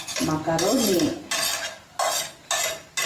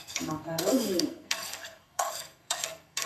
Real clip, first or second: first